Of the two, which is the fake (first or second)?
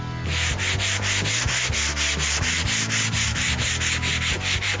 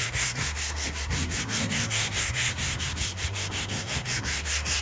second